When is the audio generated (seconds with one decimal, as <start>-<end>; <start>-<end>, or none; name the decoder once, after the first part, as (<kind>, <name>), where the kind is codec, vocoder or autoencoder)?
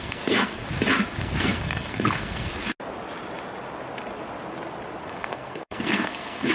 0.0-0.6 (codec, SNAC); 1.2-2.5; 5.0-6.5